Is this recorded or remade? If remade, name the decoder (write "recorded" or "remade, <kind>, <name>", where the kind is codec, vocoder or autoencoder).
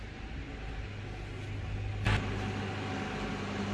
recorded